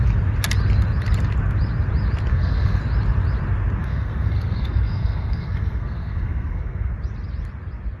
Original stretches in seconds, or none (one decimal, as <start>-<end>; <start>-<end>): 0.0-2.3; 2.8-3.8; 6.9-8.0